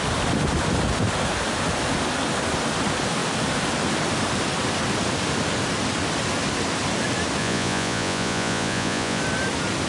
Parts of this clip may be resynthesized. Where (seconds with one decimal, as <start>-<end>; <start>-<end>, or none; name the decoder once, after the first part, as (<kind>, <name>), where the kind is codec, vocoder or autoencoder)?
7.4-9.2 (vocoder, Vocos)